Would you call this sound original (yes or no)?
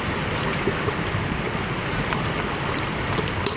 yes